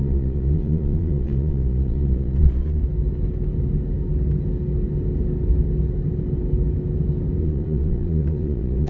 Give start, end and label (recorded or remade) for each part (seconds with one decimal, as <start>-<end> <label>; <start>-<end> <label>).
0.0-2.8 remade; 2.8-7.4 recorded; 7.4-8.9 remade